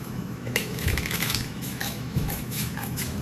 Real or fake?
fake